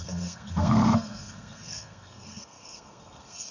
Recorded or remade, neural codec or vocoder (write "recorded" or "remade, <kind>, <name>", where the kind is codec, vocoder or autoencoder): remade, codec, SNAC